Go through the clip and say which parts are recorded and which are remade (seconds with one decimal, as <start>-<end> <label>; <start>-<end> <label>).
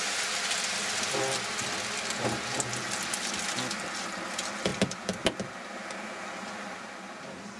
0.0-7.6 recorded